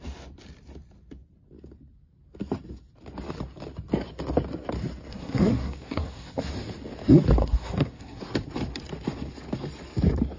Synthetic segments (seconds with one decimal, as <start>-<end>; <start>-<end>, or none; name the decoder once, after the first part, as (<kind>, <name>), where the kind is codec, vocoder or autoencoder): 5.1-6.5 (codec, SNAC); 7.4-8.2